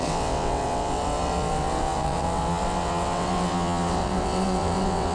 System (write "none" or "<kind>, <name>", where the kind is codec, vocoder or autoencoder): vocoder, WaveNeXt